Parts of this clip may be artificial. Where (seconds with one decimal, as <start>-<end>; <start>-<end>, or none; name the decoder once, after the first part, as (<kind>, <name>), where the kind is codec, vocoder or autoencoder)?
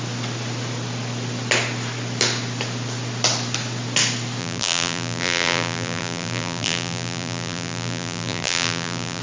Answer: 4.4-9.2 (vocoder, BigVGAN v2)